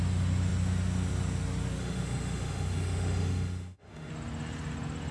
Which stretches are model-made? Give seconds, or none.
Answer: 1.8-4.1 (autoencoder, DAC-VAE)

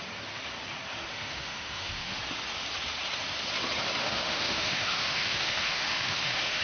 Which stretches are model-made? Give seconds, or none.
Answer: 1.1-2.2 (autoencoder, DAC-VAE); 4.0-6.6

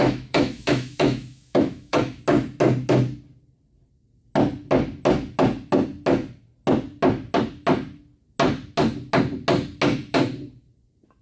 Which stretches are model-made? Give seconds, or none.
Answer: 0.0-2.2 (autoencoder, DAC-VAE)